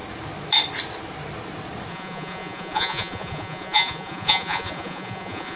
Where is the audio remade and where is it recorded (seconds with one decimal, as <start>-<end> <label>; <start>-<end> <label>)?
0.0-1.9 recorded; 1.9-5.6 remade